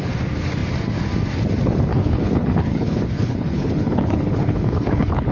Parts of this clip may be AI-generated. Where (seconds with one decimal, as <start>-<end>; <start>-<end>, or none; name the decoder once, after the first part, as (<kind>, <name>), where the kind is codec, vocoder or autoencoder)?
1.9-5.3 (codec, HILCodec)